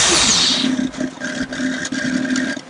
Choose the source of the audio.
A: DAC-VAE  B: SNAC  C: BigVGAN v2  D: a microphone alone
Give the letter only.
D